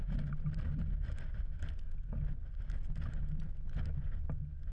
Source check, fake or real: real